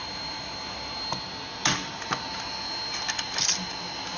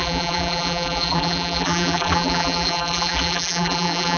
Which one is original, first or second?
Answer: first